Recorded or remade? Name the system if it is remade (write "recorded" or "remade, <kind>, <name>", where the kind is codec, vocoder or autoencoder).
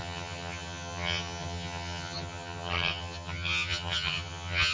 remade, vocoder, HiFi-GAN